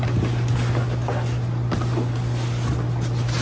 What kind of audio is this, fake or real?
real